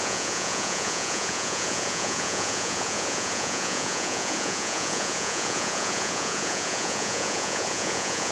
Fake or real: fake